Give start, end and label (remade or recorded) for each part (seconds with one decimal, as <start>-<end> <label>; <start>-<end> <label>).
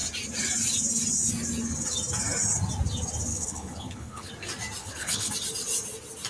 0.0-3.3 recorded; 3.3-4.3 remade; 4.3-4.8 recorded; 4.8-5.3 remade; 5.3-6.3 recorded